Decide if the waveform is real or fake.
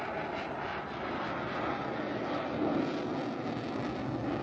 real